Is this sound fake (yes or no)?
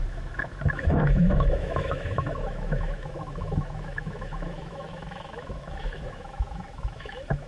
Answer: yes